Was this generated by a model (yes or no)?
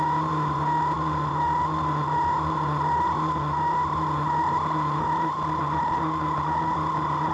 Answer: no